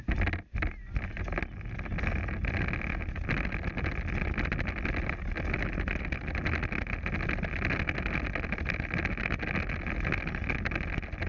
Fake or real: real